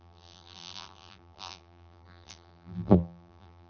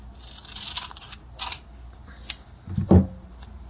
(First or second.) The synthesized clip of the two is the first